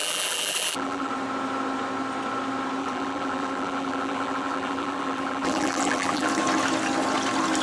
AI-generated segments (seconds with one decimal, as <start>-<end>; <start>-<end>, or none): 0.0-1.1; 2.8-6.3